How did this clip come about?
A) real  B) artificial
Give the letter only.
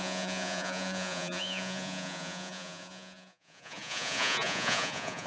B